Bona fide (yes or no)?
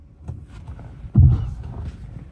yes